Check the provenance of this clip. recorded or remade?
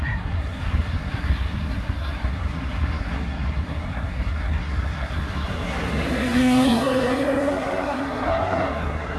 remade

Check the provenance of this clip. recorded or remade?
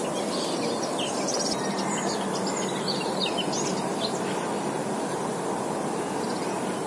recorded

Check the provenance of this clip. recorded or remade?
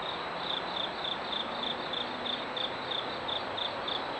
recorded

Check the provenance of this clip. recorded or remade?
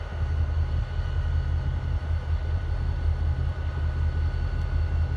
recorded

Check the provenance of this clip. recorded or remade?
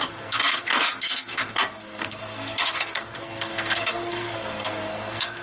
remade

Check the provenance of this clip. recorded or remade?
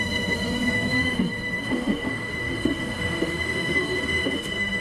remade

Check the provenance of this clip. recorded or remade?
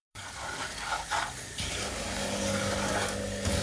remade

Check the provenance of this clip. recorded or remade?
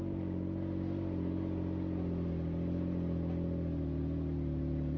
recorded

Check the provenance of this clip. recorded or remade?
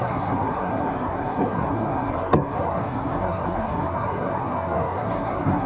remade